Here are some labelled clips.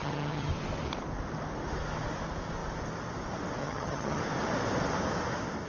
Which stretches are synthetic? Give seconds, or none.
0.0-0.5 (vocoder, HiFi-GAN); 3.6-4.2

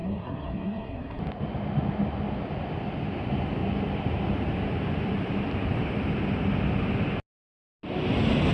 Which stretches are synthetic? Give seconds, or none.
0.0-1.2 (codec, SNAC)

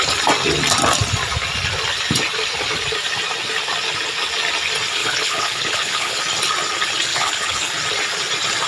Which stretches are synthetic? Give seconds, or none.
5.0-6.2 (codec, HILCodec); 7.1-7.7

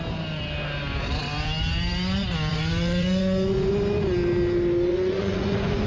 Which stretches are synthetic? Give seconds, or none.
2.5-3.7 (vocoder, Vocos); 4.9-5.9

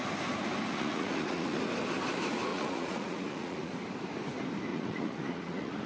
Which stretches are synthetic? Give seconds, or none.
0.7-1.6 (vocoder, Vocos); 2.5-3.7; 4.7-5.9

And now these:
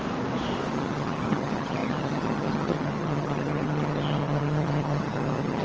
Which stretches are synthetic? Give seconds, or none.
0.7-5.6 (vocoder, HiFi-GAN)

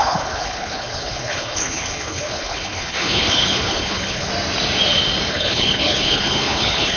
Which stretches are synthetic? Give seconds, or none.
0.0-4.3 (codec, HILCodec); 5.3-7.0

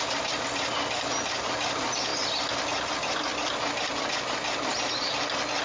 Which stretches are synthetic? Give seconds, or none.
none